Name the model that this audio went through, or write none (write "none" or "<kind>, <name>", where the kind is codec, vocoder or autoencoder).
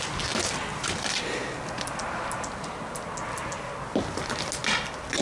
none